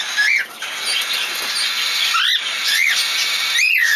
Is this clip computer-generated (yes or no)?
no